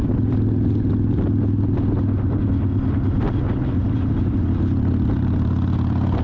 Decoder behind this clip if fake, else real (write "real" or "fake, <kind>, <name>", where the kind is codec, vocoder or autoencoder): real